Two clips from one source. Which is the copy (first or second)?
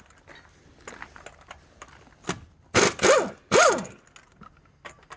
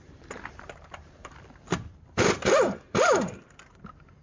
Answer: second